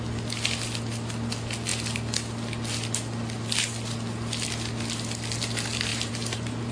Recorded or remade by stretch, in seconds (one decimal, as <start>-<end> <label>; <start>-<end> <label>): 0.0-5.9 recorded; 5.9-6.7 remade